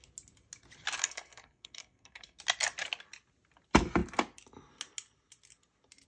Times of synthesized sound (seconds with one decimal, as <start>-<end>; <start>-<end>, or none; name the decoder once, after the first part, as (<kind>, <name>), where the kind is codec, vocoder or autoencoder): 1.0-2.4 (codec, SNAC)